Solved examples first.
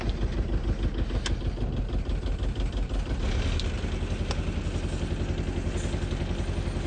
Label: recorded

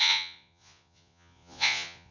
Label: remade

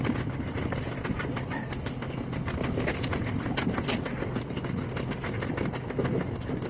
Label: recorded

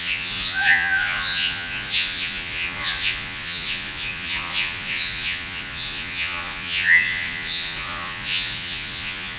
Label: remade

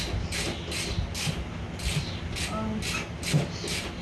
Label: recorded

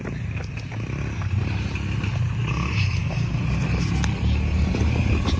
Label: recorded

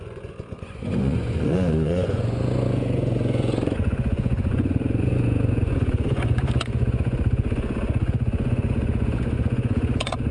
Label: remade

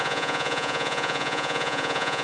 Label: remade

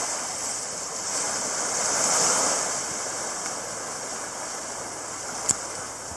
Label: recorded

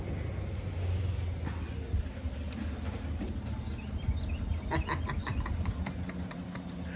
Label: recorded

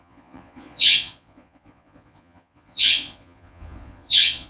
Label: remade